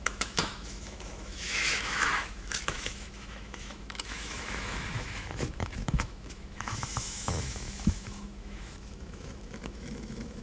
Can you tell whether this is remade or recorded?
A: remade